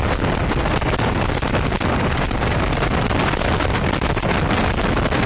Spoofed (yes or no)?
no